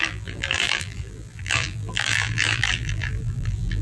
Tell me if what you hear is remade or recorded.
remade